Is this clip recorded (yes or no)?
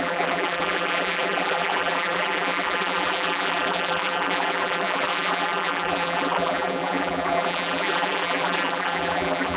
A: no